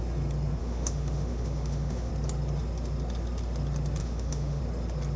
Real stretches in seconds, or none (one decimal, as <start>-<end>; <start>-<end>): 0.0-0.6; 2.1-4.0; 4.6-5.2